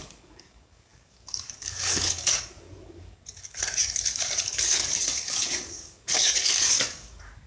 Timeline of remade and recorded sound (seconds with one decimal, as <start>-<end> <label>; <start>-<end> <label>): 0.0-7.5 remade